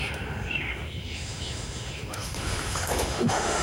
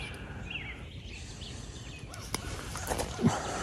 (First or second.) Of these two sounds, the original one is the second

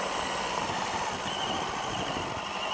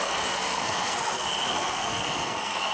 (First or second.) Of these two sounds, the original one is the first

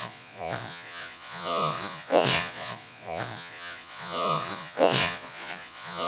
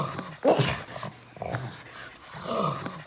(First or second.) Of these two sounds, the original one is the second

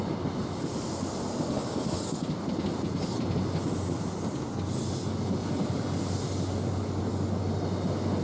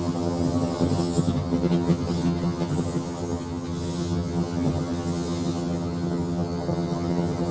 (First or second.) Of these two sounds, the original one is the first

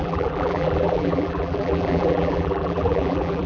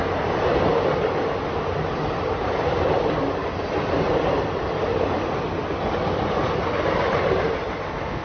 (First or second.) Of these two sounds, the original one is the second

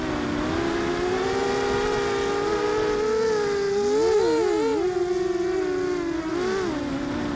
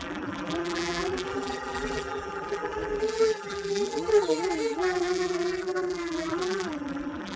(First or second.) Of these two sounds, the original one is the first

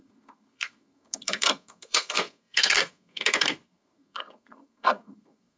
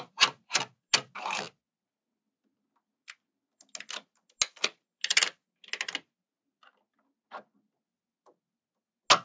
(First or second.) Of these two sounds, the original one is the second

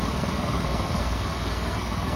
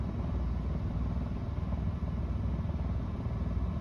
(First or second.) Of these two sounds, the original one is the second